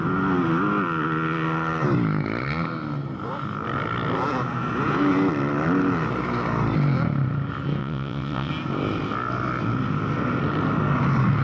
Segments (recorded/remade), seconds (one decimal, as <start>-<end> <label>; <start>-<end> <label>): 0.0-7.8 recorded; 7.8-8.5 remade; 8.5-11.4 recorded